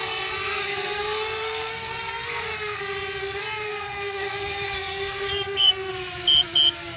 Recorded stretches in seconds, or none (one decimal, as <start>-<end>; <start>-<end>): 2.8-3.2; 5.9-7.0